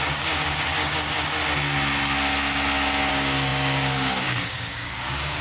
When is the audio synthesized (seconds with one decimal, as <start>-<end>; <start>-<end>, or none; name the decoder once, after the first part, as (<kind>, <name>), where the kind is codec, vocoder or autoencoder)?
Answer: 0.0-1.4 (codec, DAC); 3.1-5.4